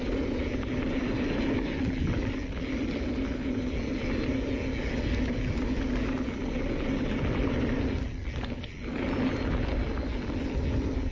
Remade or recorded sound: recorded